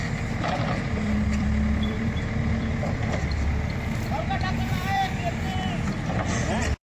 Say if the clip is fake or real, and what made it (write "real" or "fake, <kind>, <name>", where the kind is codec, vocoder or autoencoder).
fake, vocoder, BigVGAN v2